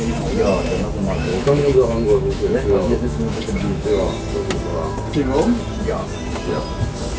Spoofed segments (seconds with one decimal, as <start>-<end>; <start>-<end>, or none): 1.3-3.9